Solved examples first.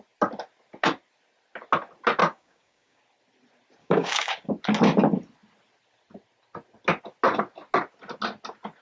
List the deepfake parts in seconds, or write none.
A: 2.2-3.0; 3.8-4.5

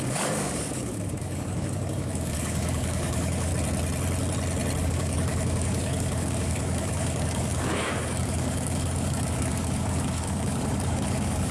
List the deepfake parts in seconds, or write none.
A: 0.0-3.5; 4.8-11.5

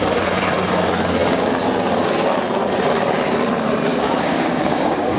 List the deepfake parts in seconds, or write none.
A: 3.9-5.2

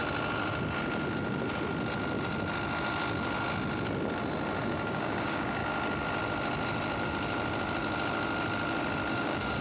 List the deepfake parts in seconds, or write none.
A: 4.6-5.6; 9.1-9.6

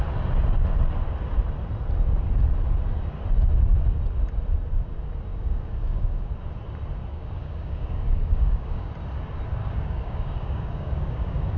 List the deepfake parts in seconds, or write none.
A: 5.3-6.4; 7.1-8.9; 9.6-11.6

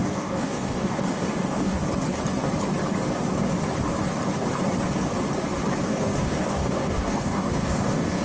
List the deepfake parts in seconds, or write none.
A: 0.0-1.8; 5.8-8.2